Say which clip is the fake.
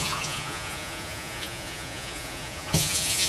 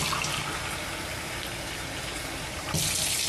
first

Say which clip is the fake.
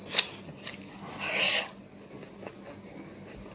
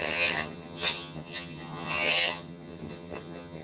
second